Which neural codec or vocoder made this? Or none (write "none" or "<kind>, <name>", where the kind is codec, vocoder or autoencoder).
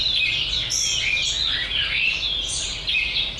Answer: none